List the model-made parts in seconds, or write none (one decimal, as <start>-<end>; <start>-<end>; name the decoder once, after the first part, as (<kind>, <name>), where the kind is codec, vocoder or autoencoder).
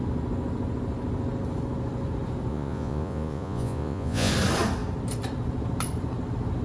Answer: 2.5-4.3 (vocoder, Vocos)